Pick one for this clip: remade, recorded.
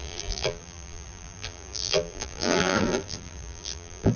remade